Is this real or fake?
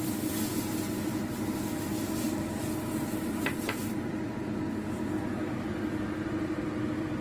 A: real